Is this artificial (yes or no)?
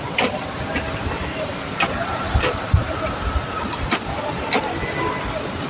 no